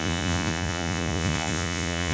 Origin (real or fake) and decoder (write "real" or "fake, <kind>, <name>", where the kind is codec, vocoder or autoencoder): fake, vocoder, Vocos